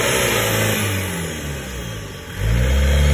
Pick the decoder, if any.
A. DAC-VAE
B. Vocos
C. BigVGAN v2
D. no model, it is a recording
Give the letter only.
D